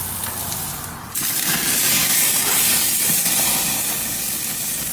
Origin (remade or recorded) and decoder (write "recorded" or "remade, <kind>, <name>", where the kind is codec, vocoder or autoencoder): recorded